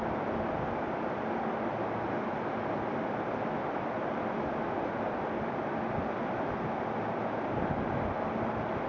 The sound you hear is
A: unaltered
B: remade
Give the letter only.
A